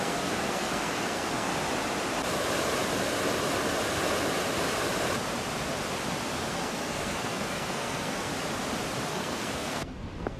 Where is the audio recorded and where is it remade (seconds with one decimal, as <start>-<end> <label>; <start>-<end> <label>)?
0.0-1.5 remade; 1.5-6.5 recorded; 6.5-8.3 remade; 8.3-9.1 recorded; 9.1-10.4 remade